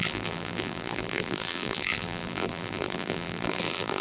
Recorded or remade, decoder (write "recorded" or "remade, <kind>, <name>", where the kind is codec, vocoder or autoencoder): remade, vocoder, BigVGAN v2